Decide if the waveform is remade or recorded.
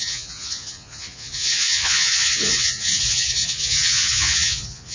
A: remade